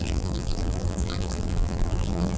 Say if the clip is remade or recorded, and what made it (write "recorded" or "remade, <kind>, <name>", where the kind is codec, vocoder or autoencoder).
remade, vocoder, BigVGAN v2